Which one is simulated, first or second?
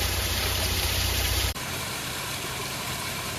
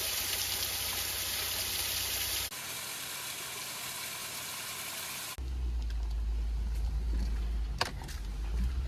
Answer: first